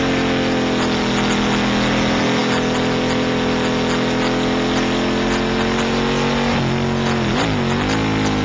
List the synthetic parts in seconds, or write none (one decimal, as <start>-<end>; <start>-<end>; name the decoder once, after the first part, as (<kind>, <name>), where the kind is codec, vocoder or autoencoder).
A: none